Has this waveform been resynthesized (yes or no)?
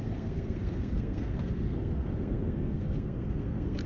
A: yes